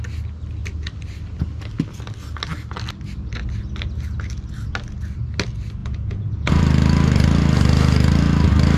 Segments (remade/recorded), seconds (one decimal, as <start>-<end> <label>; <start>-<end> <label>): 0.0-5.8 recorded; 5.8-6.6 remade; 6.6-8.8 recorded